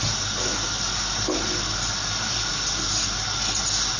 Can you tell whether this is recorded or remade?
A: recorded